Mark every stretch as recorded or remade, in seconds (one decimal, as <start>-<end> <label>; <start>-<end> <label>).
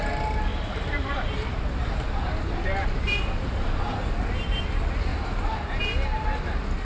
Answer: 0.0-0.5 recorded; 0.5-4.6 remade; 4.6-5.1 recorded; 5.1-5.8 remade; 5.8-6.8 recorded